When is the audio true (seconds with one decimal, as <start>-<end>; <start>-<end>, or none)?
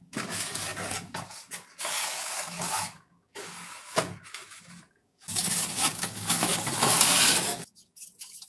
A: none